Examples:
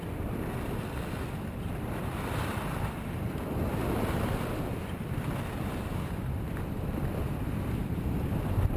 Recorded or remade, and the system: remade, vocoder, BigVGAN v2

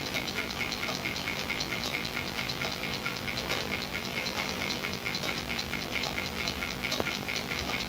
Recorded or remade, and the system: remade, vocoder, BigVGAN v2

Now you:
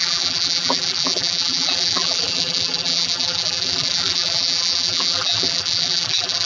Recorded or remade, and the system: remade, vocoder, BigVGAN v2